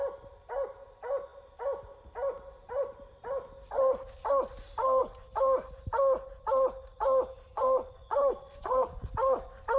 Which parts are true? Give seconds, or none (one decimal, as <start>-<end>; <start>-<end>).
0.0-7.5; 9.1-9.8